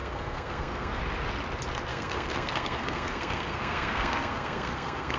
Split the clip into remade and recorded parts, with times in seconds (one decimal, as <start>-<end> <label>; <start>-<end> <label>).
0.0-1.0 remade; 1.0-1.9 recorded; 1.9-5.2 remade